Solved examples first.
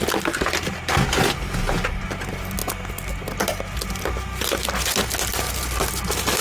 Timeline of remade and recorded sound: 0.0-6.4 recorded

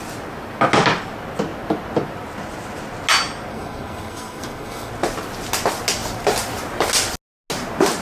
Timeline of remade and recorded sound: 0.0-3.5 recorded; 3.5-4.9 remade; 4.9-8.0 recorded

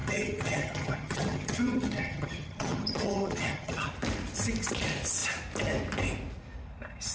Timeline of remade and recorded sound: 0.0-3.9 remade; 3.9-7.1 recorded

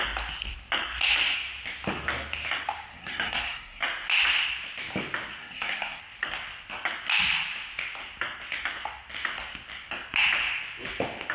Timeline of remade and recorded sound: 0.0-2.9 recorded; 2.9-3.8 remade; 3.8-5.4 recorded; 5.4-6.0 remade; 6.0-11.3 recorded

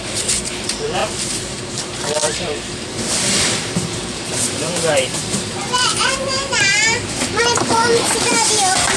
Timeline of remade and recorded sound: 0.0-9.0 remade

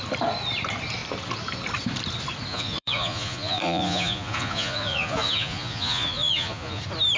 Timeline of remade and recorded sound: 0.0-2.5 recorded; 2.5-6.8 remade; 6.8-7.2 recorded